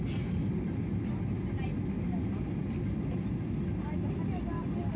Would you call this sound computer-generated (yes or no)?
no